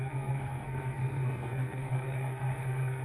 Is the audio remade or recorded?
remade